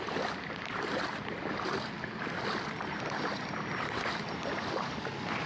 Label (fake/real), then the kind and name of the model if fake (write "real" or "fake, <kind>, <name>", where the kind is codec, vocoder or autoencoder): fake, vocoder, BigVGAN v2